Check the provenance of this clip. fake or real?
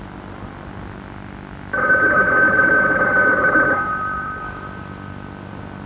real